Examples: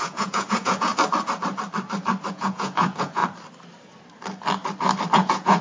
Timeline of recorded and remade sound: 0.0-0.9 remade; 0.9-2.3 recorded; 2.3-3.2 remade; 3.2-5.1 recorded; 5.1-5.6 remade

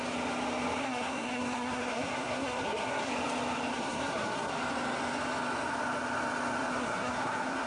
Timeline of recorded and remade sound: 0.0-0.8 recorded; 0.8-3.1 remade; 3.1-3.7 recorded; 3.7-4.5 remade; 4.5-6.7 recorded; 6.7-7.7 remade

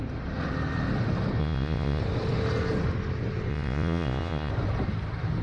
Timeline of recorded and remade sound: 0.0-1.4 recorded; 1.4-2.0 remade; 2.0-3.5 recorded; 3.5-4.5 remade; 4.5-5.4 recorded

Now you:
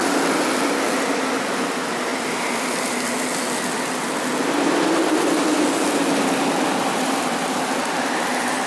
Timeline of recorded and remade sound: 0.0-8.7 recorded

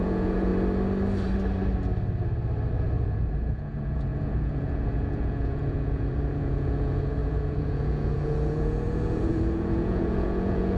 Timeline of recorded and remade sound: 0.0-0.5 remade; 0.5-2.7 recorded; 2.7-10.8 remade

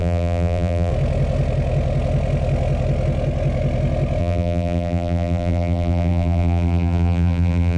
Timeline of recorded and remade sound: 0.0-0.9 remade; 0.9-4.2 recorded; 4.2-7.8 remade